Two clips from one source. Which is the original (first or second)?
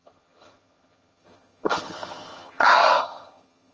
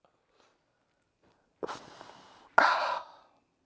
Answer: second